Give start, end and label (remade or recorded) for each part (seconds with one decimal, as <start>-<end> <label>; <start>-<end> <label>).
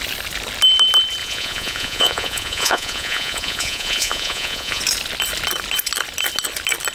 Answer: 0.0-1.2 recorded; 1.2-4.8 remade; 4.8-6.9 recorded